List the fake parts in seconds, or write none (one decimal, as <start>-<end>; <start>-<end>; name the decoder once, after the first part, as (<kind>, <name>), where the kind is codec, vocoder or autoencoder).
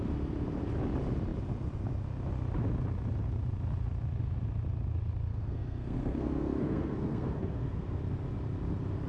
5.3-8.0 (codec, SNAC)